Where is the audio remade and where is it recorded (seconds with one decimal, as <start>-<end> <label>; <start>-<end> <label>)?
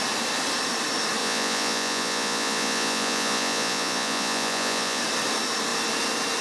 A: 0.0-1.2 recorded; 1.2-5.0 remade; 5.0-6.4 recorded